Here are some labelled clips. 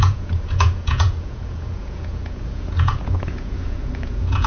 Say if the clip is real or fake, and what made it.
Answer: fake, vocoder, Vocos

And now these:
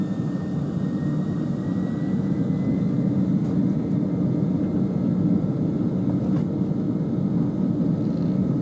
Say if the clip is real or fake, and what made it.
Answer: real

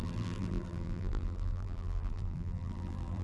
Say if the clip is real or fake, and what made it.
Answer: fake, vocoder, BigVGAN v2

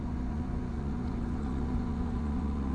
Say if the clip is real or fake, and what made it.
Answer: fake, vocoder, Vocos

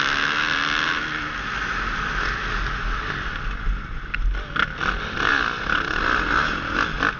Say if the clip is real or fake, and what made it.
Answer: real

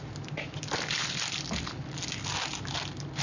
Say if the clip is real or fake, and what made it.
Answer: real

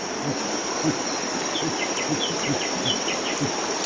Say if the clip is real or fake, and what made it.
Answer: real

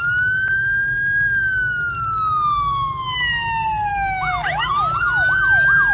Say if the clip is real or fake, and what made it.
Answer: real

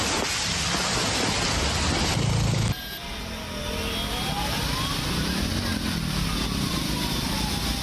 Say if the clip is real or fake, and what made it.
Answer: real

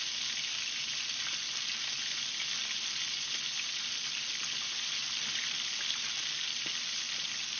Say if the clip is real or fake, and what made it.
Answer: real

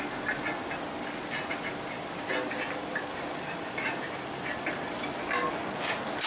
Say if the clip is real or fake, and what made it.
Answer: real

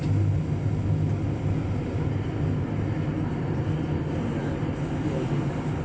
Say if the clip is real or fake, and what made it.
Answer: real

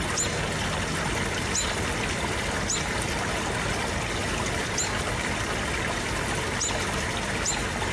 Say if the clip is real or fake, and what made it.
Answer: real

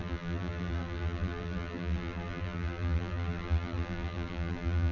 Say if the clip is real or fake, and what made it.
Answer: fake, vocoder, BigVGAN v2